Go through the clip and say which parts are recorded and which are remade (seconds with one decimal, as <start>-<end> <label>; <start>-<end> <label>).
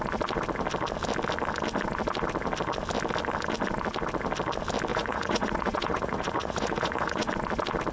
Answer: 0.0-4.9 recorded; 4.9-7.3 remade; 7.3-7.9 recorded